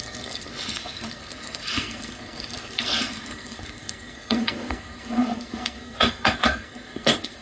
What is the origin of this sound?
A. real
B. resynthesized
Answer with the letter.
B